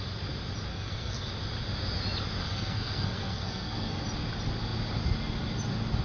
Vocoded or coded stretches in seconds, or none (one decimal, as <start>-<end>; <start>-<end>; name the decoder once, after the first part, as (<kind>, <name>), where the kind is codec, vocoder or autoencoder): 0.7-1.3 (codec, SNAC); 2.4-4.0